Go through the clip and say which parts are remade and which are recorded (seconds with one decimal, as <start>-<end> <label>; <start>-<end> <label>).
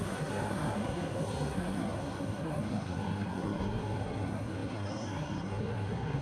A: 0.0-6.2 remade